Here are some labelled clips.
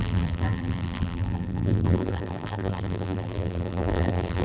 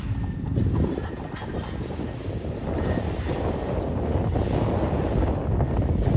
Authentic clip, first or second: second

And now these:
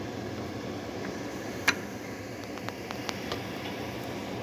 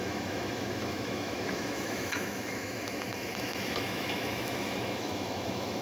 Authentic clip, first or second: first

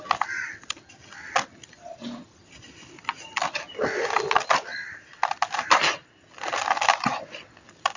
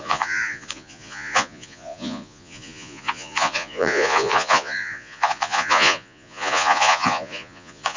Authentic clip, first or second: first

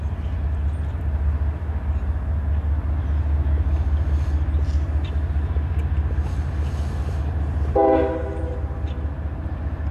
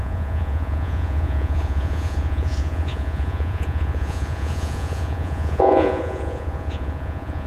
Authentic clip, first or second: first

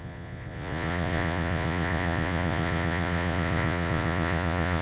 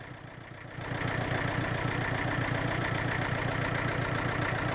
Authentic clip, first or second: second